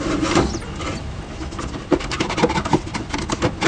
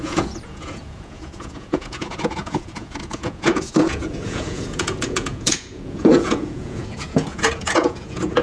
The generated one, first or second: second